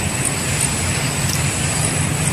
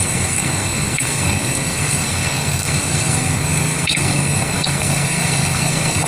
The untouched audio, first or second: first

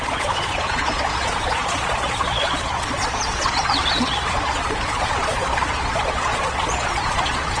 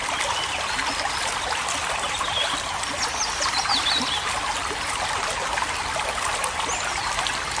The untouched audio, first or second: second